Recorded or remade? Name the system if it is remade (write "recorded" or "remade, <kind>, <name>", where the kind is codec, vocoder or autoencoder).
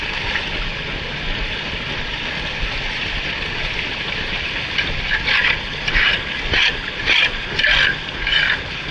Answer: recorded